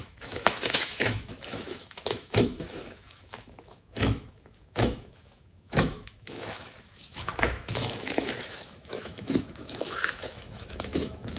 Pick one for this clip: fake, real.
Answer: fake